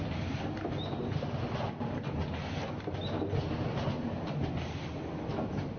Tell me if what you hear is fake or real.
real